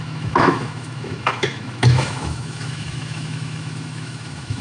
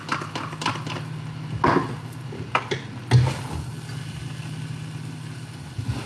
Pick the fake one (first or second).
first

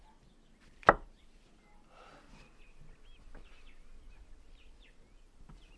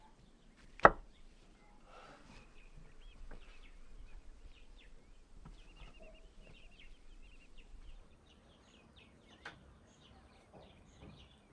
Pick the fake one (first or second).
second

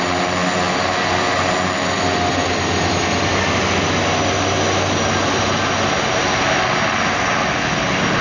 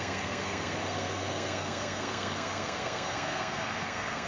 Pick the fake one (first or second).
second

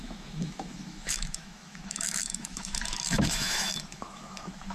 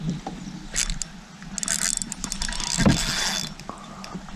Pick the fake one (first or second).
first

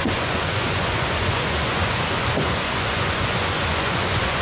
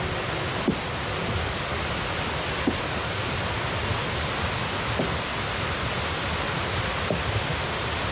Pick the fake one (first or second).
first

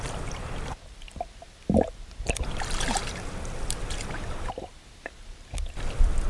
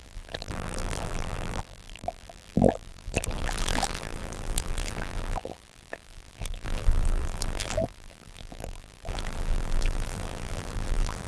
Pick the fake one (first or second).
second